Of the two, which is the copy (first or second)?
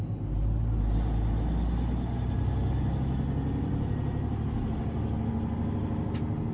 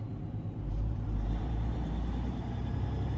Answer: second